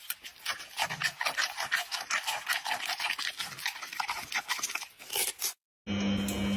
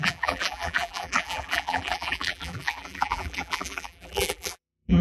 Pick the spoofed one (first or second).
second